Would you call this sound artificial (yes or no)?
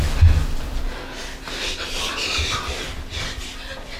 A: no